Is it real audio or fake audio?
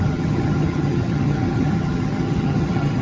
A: fake